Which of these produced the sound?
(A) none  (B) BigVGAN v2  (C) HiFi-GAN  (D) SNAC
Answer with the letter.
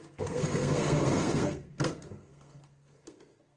D